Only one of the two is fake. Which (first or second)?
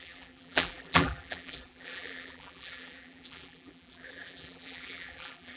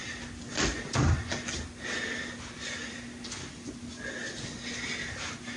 first